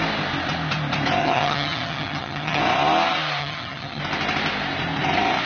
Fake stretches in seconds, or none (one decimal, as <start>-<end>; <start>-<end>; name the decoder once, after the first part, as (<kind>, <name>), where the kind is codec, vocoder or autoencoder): 1.2-2.6 (vocoder, HiFi-GAN); 3.4-4.0